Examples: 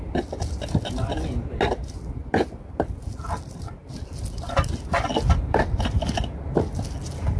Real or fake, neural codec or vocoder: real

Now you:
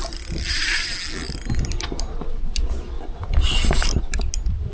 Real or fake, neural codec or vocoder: real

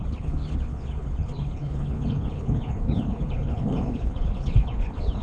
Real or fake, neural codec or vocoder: fake, codec, HILCodec